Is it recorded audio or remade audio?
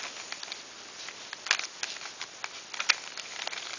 recorded